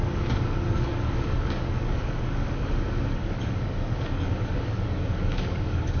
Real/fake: fake